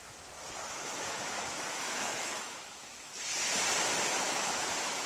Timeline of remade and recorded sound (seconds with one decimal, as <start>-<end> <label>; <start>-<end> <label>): 0.0-3.1 remade; 3.1-4.1 recorded; 4.1-5.1 remade